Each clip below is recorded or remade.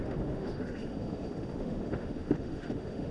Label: remade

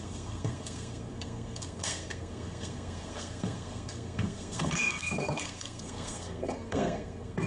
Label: remade